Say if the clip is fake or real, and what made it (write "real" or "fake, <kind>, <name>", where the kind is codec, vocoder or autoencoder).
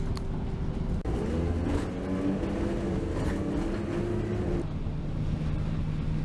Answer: real